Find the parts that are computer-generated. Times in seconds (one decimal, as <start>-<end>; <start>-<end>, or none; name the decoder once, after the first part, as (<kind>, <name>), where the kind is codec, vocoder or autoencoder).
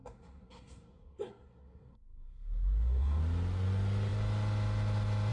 0.0-3.2 (codec, SNAC)